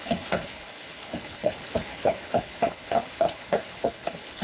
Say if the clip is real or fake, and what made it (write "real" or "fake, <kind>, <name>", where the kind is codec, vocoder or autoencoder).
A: fake, codec, HILCodec